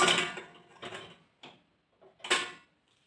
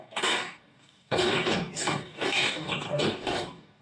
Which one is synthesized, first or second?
second